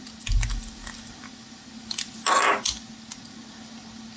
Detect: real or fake real